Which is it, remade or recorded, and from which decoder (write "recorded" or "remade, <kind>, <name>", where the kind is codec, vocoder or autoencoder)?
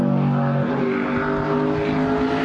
recorded